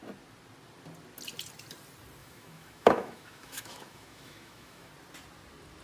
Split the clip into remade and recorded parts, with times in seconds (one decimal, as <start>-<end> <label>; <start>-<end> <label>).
0.0-2.2 recorded; 2.2-4.9 remade; 4.9-5.8 recorded